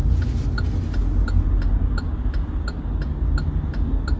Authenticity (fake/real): real